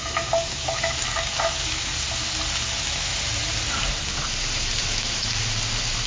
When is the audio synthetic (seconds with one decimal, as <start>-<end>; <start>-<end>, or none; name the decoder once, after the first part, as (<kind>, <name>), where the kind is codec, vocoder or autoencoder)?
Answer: 0.0-1.9 (autoencoder, DAC-VAE); 2.7-3.1; 4.6-5.3

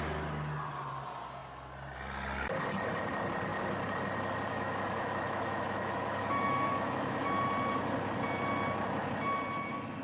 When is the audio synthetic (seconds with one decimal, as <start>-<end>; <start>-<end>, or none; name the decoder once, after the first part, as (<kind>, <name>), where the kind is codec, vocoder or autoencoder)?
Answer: 4.5-7.3 (autoencoder, DAC-VAE)

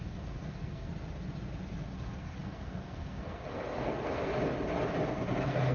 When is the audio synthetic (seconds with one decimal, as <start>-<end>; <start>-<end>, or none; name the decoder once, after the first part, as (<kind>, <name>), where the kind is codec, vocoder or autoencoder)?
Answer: 0.0-0.9 (codec, SNAC); 1.9-4.3; 5.1-5.7

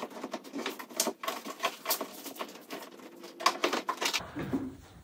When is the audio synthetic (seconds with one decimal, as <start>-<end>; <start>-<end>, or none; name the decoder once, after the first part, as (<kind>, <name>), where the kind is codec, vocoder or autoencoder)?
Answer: 3.6-4.2 (vocoder, BigVGAN v2)